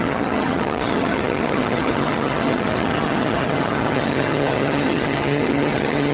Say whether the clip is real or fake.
fake